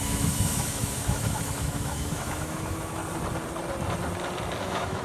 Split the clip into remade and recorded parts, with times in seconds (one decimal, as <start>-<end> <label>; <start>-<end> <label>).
0.0-3.0 remade; 3.0-4.6 recorded; 4.6-5.0 remade